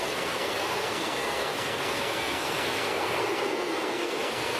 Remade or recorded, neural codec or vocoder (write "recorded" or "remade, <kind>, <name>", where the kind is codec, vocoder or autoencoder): remade, codec, SNAC